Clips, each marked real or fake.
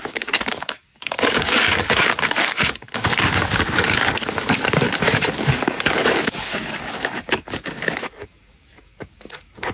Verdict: fake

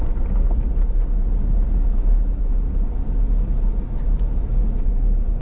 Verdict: real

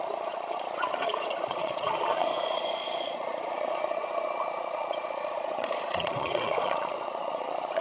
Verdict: fake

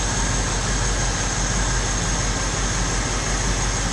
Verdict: real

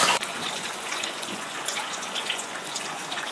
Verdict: fake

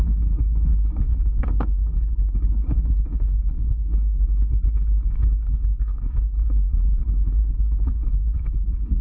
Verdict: fake